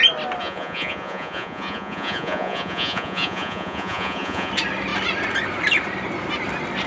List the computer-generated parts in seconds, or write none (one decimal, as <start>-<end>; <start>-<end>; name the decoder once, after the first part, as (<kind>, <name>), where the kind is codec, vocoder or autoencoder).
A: 0.4-4.5 (vocoder, Vocos)